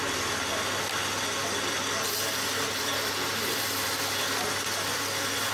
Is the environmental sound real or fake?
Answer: real